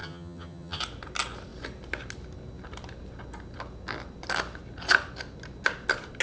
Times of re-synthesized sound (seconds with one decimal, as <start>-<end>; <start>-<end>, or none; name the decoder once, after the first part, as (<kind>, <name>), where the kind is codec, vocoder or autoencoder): 0.0-0.8 (vocoder, HiFi-GAN)